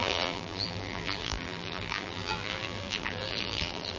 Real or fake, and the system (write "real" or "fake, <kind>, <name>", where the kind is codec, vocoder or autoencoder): fake, vocoder, BigVGAN v2